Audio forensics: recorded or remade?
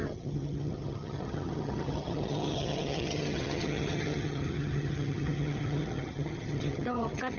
remade